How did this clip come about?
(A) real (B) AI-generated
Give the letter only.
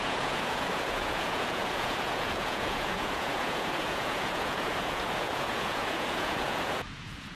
B